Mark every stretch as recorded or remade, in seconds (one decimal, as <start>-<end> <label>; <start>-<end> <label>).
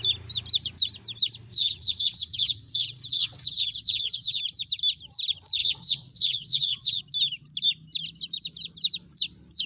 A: 0.0-1.5 recorded; 1.5-4.4 remade; 4.4-5.6 recorded; 5.6-7.0 remade; 7.0-9.7 recorded